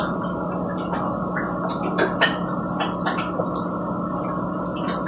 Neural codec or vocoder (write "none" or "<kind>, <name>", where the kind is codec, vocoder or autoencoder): none